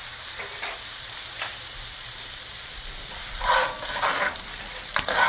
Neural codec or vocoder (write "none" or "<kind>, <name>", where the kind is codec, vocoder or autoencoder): vocoder, BigVGAN v2